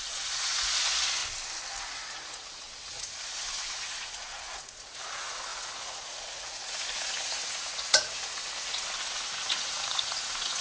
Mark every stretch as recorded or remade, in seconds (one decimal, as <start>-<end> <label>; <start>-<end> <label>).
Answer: 0.0-1.2 remade; 1.2-1.8 recorded; 1.8-10.6 remade